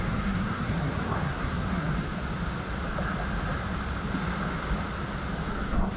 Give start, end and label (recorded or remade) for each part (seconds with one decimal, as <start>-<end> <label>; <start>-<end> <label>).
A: 0.0-1.9 remade; 1.9-5.5 recorded; 5.5-6.0 remade